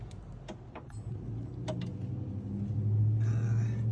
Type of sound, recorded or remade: recorded